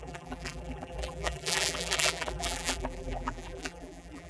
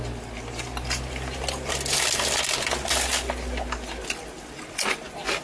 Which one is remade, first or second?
first